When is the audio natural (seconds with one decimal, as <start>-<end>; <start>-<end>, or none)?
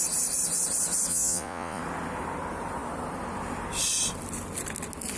0.0-1.1; 1.8-5.2